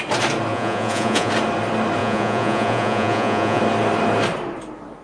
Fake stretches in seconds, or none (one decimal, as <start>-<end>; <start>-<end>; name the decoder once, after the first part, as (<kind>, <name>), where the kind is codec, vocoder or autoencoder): 0.5-1.3 (vocoder, Vocos); 2.0-3.6